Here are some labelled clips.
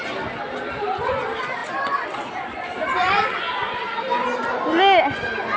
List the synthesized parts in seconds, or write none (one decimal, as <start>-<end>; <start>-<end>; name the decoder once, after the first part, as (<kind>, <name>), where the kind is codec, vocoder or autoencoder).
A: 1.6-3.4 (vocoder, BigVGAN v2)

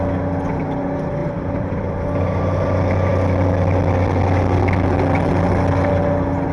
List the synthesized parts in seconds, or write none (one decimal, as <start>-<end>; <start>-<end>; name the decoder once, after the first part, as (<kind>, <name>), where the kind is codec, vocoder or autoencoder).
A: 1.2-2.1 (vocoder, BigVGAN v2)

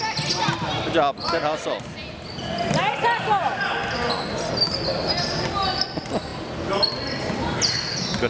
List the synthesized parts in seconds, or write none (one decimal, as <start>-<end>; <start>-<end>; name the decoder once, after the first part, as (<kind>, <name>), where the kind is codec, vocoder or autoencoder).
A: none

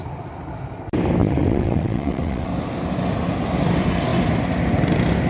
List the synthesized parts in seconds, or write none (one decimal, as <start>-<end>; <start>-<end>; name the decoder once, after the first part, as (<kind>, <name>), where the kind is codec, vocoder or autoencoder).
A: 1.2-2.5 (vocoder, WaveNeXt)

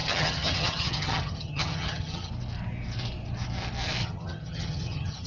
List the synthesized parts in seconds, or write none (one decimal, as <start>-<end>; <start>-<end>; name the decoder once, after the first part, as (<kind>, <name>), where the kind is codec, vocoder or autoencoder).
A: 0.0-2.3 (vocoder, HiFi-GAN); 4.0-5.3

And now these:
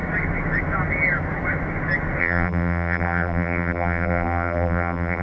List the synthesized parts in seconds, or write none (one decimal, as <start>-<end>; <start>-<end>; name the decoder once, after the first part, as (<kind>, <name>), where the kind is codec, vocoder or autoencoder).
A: 2.2-5.2 (vocoder, BigVGAN v2)

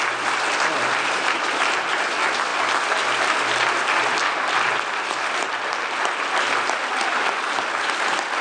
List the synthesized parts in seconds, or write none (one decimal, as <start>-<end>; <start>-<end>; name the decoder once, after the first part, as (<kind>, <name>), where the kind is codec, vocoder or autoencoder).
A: none